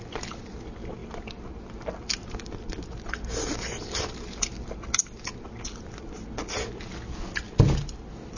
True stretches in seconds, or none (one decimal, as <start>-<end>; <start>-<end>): 0.0-2.2; 3.9-8.4